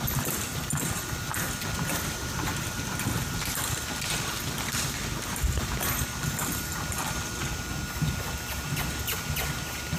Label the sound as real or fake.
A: fake